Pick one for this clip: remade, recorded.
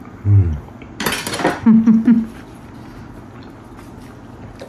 recorded